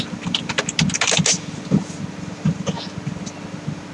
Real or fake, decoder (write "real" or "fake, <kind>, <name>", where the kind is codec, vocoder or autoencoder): real